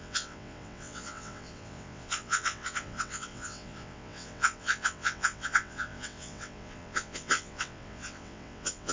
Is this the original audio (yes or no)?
no